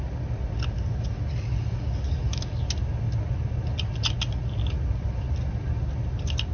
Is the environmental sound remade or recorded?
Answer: recorded